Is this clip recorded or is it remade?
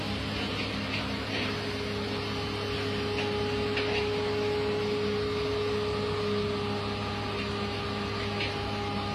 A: recorded